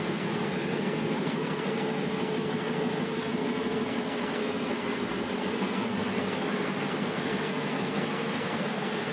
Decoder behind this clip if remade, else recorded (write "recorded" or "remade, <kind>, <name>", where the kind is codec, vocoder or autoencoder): remade, codec, SNAC